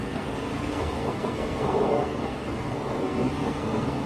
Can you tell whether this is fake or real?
fake